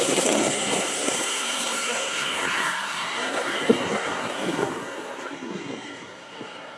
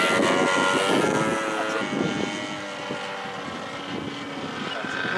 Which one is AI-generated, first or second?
first